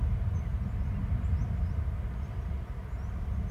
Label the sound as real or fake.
real